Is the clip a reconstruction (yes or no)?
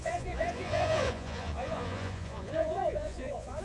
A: yes